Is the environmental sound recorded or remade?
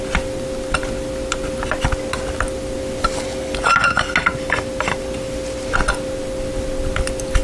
recorded